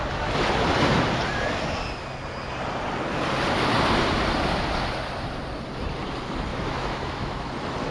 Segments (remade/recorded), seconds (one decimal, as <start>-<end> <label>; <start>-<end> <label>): 0.0-6.5 recorded; 6.5-7.5 remade; 7.5-7.9 recorded